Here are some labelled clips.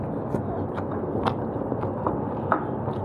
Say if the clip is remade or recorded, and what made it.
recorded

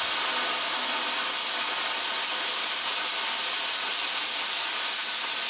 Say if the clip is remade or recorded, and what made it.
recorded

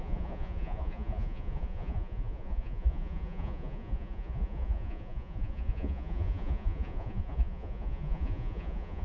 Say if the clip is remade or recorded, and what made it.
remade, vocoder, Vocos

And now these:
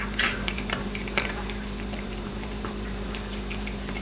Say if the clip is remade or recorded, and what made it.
remade, vocoder, BigVGAN v2